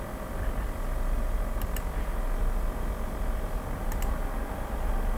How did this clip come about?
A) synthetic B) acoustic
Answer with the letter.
B